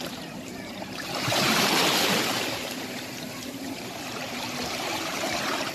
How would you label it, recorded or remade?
remade